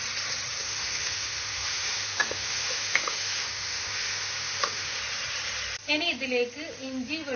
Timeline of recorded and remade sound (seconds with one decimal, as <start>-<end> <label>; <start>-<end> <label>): 0.0-0.6 recorded; 0.6-5.0 remade; 5.0-7.4 recorded